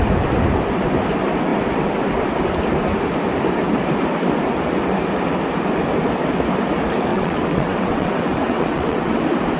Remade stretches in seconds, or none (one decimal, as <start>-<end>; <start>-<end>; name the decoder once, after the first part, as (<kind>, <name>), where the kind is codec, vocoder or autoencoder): 7.1-9.2 (vocoder, WaveNeXt)